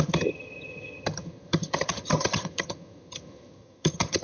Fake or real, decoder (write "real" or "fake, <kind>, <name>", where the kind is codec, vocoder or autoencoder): fake, vocoder, HiFi-GAN